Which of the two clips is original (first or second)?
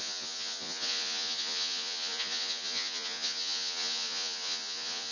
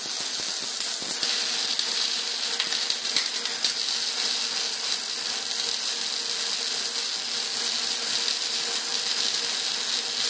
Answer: second